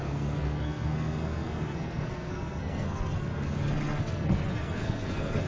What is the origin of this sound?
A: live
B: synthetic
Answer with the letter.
B